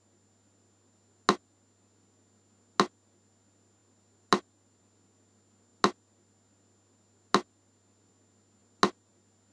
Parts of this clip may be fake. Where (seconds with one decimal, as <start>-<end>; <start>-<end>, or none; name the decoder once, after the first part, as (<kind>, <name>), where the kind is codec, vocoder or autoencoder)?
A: none